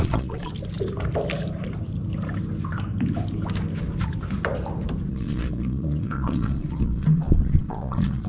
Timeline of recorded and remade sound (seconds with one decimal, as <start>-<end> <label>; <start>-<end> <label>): 0.0-0.5 remade; 0.5-5.1 recorded; 5.1-8.3 remade

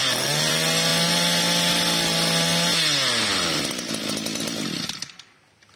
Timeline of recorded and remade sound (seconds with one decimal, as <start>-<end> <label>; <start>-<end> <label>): 0.0-5.8 recorded